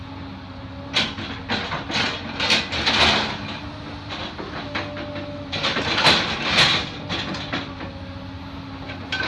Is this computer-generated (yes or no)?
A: no